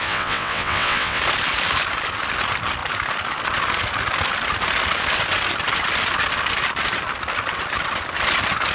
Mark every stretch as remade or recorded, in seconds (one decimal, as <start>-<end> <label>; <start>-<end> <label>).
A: 0.0-1.2 remade; 1.2-8.7 recorded